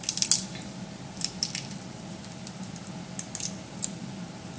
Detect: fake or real real